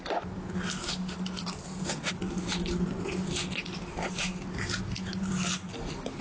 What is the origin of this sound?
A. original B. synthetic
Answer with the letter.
A